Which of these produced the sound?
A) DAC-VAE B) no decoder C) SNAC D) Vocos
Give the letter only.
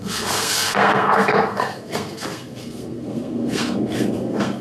C